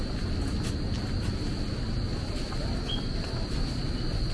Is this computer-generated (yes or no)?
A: no